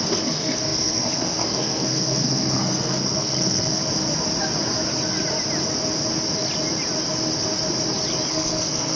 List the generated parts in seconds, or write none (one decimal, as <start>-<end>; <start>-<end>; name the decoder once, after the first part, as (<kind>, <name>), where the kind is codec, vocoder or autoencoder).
0.0-3.8 (codec, SNAC); 8.3-9.0